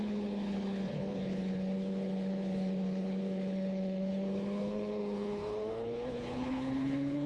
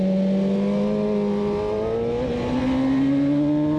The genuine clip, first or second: second